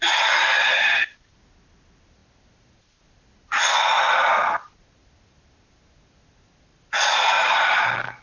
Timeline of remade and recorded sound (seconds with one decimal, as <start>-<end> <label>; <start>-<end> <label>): 0.0-8.2 recorded